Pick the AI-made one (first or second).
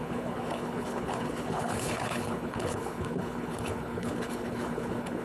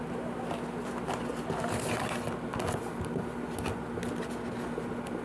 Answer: first